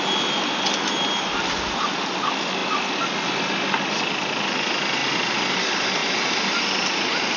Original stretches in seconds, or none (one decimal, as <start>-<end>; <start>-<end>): 0.0-7.4